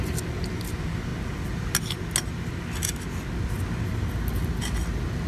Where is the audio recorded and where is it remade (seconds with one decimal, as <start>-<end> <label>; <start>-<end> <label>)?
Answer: 0.0-5.3 recorded